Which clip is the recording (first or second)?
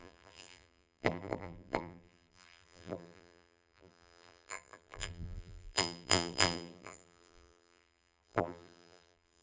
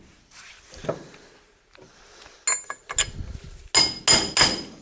second